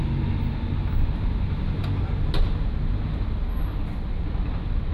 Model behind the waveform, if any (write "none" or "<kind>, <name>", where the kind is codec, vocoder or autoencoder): none